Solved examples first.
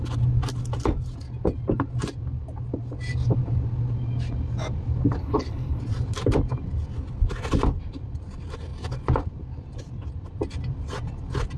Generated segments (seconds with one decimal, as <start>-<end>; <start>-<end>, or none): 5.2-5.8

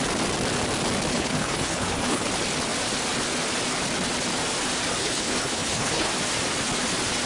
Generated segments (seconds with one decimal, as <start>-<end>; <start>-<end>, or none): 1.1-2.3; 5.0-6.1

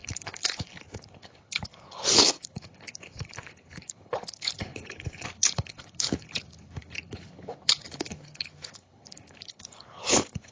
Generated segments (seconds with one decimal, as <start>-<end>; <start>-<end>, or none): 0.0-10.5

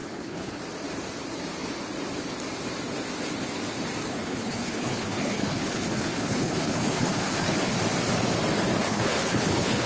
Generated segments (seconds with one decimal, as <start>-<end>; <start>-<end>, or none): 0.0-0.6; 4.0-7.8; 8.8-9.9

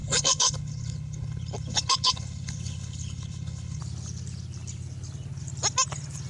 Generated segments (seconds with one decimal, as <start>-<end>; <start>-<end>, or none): 0.0-3.8

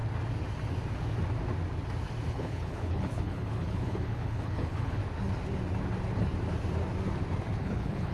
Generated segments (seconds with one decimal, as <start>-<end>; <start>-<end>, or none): 2.3-5.0; 7.6-8.1

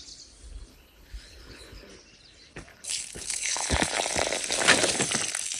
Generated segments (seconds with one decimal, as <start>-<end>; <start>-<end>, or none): 0.7-1.9; 2.7-4.0

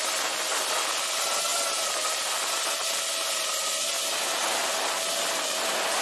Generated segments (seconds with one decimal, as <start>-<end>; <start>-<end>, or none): none